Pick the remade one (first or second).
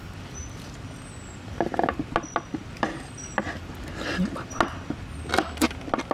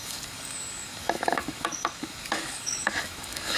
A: second